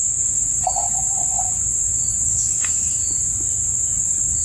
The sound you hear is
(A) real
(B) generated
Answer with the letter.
B